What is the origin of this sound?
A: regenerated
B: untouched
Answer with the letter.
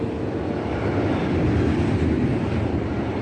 B